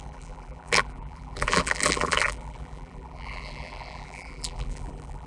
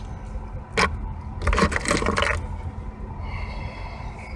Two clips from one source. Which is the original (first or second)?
second